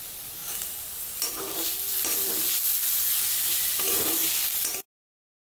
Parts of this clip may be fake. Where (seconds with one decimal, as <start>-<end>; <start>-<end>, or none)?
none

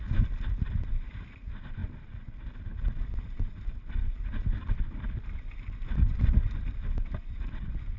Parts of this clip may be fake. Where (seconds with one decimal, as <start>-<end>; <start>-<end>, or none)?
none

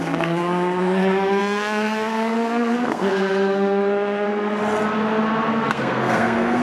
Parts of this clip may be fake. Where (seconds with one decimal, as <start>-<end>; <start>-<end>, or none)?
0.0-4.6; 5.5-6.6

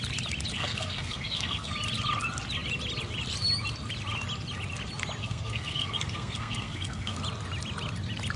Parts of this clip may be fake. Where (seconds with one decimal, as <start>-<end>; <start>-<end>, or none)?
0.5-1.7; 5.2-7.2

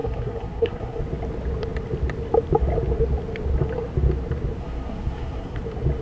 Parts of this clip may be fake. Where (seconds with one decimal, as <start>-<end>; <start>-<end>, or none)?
0.0-1.0; 4.6-5.6

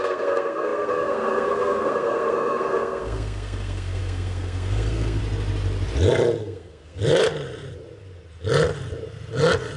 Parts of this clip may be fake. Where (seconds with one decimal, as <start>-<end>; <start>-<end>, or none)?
0.0-5.2; 6.4-7.0